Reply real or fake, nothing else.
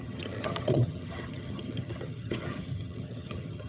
fake